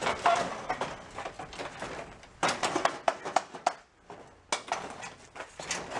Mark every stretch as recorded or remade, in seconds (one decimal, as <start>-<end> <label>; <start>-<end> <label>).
0.0-6.0 recorded